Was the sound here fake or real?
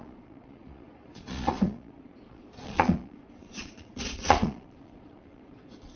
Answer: fake